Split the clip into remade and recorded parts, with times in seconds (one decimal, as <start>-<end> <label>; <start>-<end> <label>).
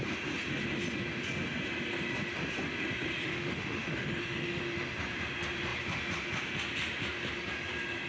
0.0-3.2 recorded; 3.2-4.6 remade; 4.6-8.1 recorded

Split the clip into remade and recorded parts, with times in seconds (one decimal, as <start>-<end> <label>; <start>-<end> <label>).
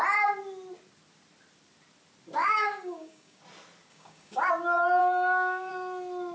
0.0-2.4 recorded; 2.4-3.4 remade; 3.4-3.9 recorded; 3.9-4.5 remade; 4.5-5.0 recorded; 5.0-5.7 remade; 5.7-6.3 recorded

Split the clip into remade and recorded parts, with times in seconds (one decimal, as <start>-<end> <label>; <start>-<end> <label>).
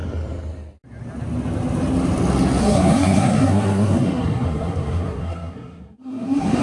0.0-2.6 recorded; 2.6-6.6 remade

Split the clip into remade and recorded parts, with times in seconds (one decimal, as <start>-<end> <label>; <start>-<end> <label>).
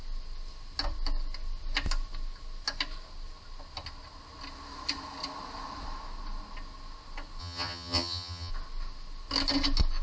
0.0-7.4 recorded; 7.4-8.5 remade; 8.5-10.0 recorded